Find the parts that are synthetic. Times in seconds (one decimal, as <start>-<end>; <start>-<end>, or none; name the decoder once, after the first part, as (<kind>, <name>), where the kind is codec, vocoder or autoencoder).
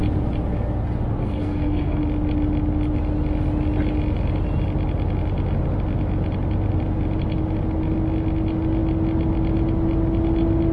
1.2-2.0 (codec, SNAC)